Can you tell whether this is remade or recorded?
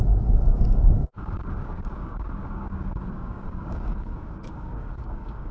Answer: remade